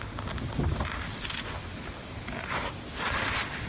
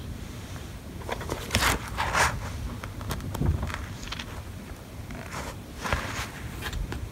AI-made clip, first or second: second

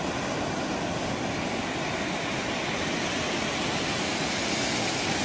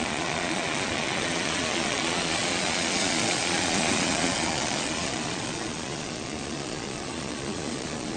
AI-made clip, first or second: second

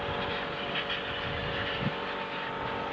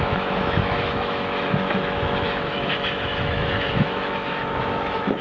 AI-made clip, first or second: second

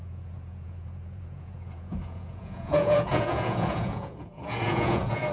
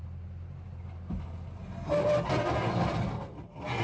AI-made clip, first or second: first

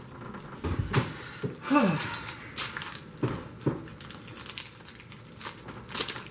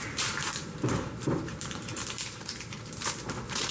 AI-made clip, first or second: second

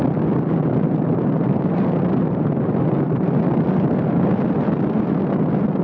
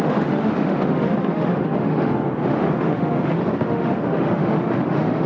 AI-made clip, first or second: second